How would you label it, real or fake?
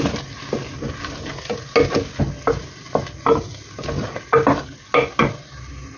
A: real